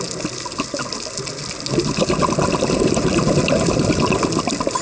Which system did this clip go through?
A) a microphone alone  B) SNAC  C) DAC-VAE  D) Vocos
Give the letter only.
A